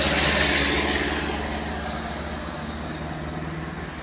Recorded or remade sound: recorded